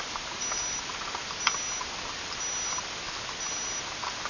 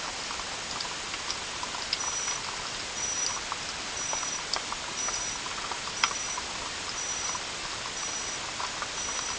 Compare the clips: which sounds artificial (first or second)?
second